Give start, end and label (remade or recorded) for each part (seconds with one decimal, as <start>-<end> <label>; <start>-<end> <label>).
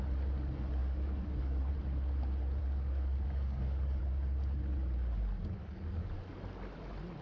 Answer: 0.0-0.8 recorded; 0.8-1.7 remade; 1.7-2.6 recorded; 2.6-4.0 remade; 4.0-5.6 recorded; 5.6-6.1 remade; 6.1-7.2 recorded